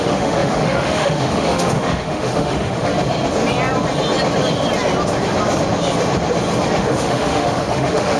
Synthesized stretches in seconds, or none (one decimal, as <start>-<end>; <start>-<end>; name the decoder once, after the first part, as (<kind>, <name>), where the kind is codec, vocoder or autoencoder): 0.0-2.9 (autoencoder, DAC-VAE); 6.8-8.2